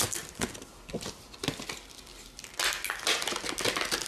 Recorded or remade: recorded